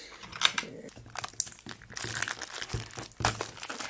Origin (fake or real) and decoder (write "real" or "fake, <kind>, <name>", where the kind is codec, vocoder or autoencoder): real